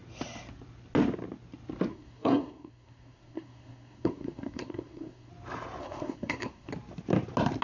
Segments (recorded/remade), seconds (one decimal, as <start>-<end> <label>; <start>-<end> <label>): 0.0-1.9 recorded; 1.9-5.3 remade; 5.3-5.8 recorded; 5.8-6.7 remade; 6.7-7.6 recorded